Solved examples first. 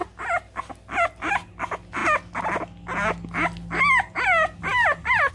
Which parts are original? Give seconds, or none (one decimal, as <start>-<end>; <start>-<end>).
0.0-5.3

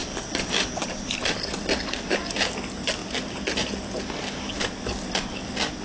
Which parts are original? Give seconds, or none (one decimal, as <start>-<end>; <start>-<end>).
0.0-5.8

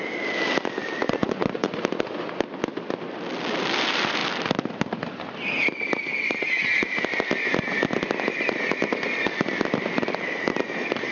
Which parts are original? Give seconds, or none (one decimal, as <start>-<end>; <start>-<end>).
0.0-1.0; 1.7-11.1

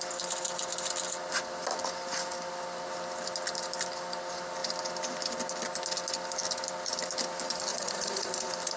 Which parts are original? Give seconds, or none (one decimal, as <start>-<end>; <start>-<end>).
0.0-7.7; 8.3-8.8

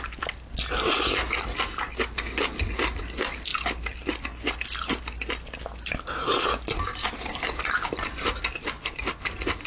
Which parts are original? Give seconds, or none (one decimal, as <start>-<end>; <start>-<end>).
0.0-9.7